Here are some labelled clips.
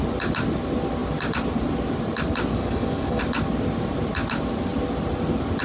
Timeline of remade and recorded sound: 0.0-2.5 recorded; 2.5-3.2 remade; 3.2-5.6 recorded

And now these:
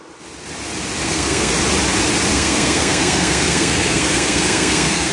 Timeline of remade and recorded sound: 0.0-1.0 recorded; 1.0-1.5 remade; 1.5-2.3 recorded; 2.3-5.1 remade

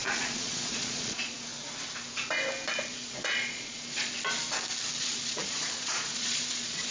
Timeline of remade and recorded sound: 0.0-1.5 remade; 1.5-2.9 recorded; 2.9-4.1 remade; 4.1-5.0 recorded; 5.0-6.9 remade

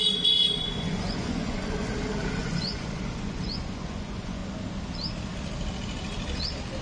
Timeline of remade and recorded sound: 0.0-1.9 remade; 1.9-2.4 recorded; 2.4-4.4 remade; 4.4-6.8 recorded